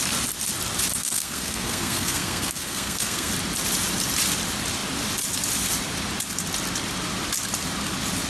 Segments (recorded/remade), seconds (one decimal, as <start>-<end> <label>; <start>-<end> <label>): 0.0-1.0 recorded; 1.0-3.3 remade; 3.3-8.3 recorded